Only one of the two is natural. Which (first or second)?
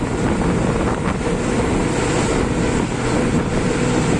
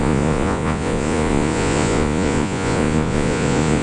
first